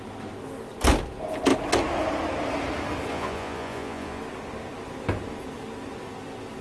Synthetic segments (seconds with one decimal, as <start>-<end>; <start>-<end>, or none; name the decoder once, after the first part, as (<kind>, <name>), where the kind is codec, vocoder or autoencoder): 3.1-4.2 (vocoder, Vocos)